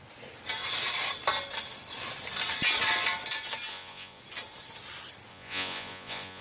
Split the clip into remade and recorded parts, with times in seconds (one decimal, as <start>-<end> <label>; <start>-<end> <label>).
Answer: 0.0-3.7 recorded; 3.7-4.2 remade; 4.2-5.3 recorded; 5.3-6.4 remade